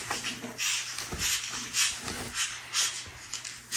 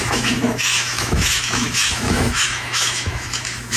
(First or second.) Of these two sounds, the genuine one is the first